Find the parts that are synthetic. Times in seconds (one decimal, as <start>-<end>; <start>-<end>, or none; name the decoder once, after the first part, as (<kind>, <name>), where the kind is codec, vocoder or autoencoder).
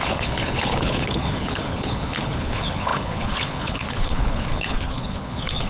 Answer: 0.0-5.7 (codec, HILCodec)